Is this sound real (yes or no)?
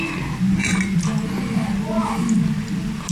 yes